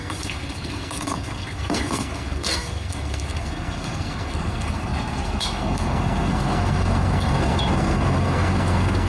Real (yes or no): no